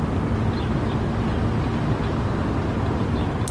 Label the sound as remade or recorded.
recorded